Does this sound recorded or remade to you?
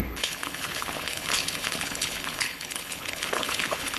remade